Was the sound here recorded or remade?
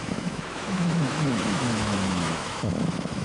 remade